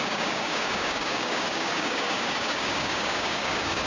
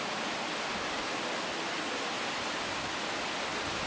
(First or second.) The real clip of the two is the second